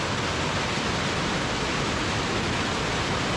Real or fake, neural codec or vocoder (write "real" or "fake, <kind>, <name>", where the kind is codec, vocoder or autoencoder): real